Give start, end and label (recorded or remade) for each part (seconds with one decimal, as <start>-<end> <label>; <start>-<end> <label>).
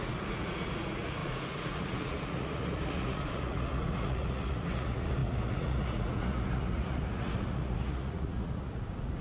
0.0-9.2 remade